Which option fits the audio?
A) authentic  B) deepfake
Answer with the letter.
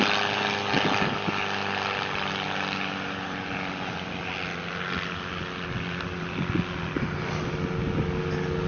A